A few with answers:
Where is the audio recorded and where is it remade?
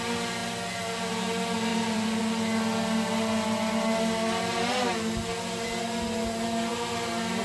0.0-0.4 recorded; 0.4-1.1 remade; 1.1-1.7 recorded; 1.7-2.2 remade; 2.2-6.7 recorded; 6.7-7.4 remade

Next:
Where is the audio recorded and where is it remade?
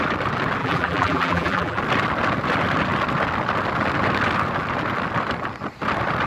0.0-0.6 recorded; 0.6-1.8 remade; 1.8-6.3 recorded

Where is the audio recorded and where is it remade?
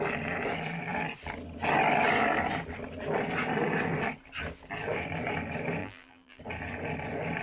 0.0-5.8 recorded; 5.8-6.4 remade; 6.4-7.4 recorded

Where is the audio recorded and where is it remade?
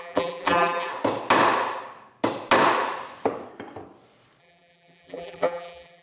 0.0-0.9 remade; 0.9-4.4 recorded; 4.4-6.0 remade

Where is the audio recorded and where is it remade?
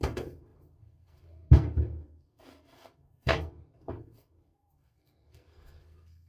0.0-6.3 remade